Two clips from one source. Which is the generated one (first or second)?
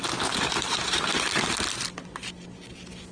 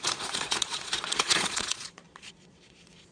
second